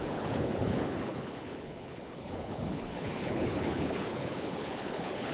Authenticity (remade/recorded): remade